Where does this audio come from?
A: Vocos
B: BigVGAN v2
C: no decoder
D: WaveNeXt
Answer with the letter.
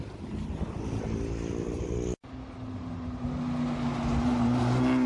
C